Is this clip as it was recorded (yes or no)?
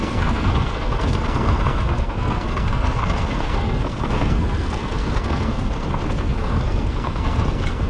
no